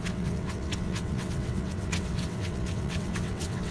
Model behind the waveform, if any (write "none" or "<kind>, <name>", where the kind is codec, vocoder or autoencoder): vocoder, WaveNeXt